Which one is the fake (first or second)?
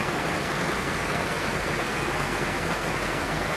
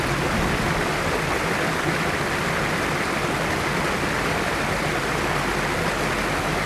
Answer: first